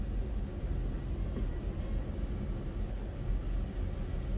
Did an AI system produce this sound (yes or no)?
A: no